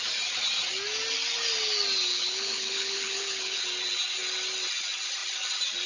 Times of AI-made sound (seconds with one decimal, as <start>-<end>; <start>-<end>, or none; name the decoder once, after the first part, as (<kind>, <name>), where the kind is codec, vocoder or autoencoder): 2.1-3.6 (codec, HILCodec)